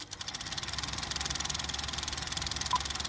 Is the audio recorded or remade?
recorded